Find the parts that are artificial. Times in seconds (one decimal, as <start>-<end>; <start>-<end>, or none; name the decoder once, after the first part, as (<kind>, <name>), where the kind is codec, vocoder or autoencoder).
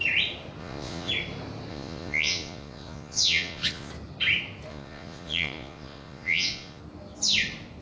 0.6-1.1 (vocoder, Vocos); 1.7-3.9; 4.7-6.8